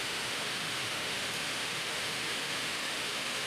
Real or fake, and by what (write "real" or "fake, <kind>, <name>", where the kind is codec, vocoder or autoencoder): fake, autoencoder, DAC-VAE